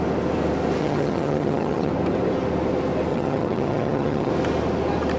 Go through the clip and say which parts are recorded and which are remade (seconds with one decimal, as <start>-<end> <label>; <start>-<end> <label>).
0.0-0.8 recorded; 0.8-1.9 remade; 1.9-3.1 recorded; 3.1-4.3 remade; 4.3-5.2 recorded